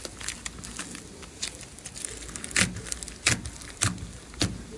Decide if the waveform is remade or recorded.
recorded